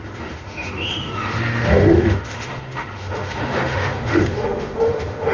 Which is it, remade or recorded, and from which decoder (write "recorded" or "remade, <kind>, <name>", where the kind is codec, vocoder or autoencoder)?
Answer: remade, autoencoder, DAC-VAE